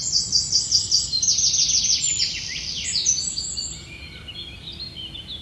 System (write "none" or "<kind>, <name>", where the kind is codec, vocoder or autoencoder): none